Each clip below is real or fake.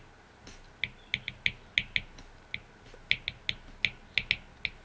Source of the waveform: real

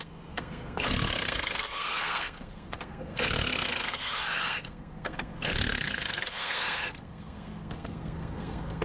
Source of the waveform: fake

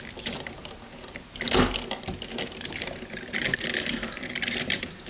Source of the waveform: real